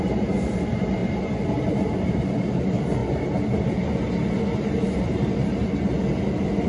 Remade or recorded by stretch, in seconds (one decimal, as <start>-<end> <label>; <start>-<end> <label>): 0.0-1.0 remade; 1.0-1.7 recorded; 1.7-3.0 remade; 3.0-4.6 recorded; 4.6-5.6 remade; 5.6-6.2 recorded; 6.2-6.7 remade